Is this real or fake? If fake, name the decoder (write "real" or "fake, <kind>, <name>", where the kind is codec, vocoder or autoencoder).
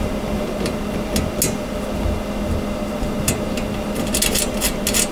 real